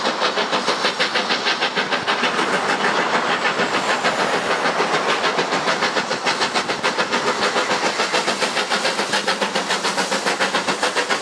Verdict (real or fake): real